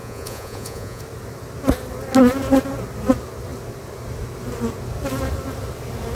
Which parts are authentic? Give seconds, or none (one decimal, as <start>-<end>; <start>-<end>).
1.0-6.1